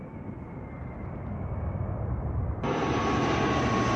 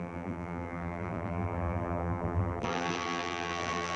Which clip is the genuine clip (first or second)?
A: first